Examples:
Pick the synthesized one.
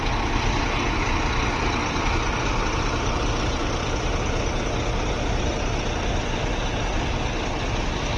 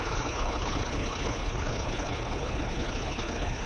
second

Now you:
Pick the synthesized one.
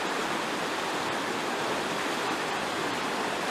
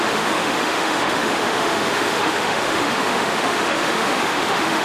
second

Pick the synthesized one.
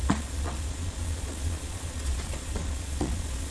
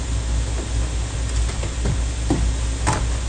first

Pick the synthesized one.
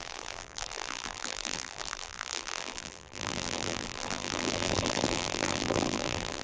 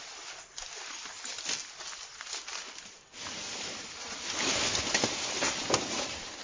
first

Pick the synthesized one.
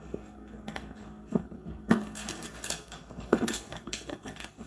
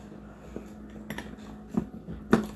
first